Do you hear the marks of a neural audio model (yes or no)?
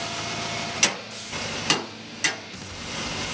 no